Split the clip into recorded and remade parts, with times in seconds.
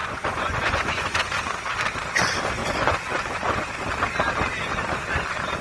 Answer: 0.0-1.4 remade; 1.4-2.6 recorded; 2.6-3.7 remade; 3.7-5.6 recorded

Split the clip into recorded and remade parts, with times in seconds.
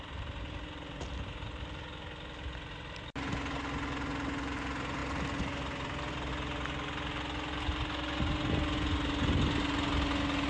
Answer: 0.0-10.5 recorded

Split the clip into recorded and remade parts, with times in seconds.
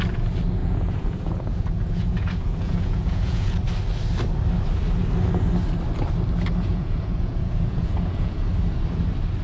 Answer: 0.0-0.6 recorded; 0.6-3.6 remade; 3.6-6.7 recorded; 6.7-8.5 remade; 8.5-9.4 recorded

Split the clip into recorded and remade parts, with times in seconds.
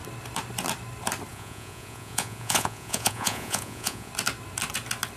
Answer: 0.0-1.3 recorded; 1.3-4.1 remade; 4.1-5.2 recorded